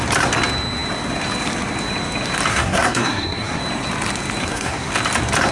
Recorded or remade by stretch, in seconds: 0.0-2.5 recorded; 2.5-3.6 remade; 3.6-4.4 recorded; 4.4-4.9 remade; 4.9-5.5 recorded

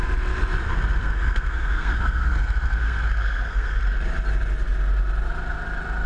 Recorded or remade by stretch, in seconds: 0.0-1.0 recorded; 1.0-3.8 remade; 3.8-6.1 recorded

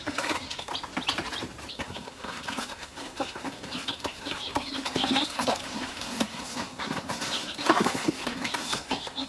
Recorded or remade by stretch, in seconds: 0.0-0.7 remade; 0.7-1.7 recorded; 1.7-9.3 remade

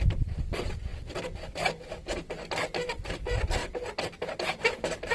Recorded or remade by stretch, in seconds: 0.0-5.1 recorded